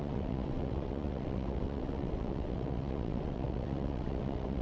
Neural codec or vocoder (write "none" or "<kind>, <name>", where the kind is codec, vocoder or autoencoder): vocoder, WaveNeXt